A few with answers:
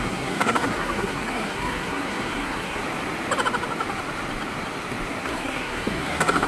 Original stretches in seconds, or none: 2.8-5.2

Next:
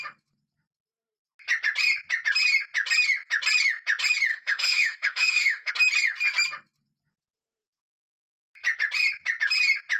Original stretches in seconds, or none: 0.0-4.3; 5.7-10.0